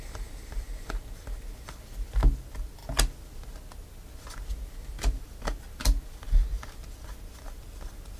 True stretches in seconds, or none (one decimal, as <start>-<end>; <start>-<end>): 0.0-8.2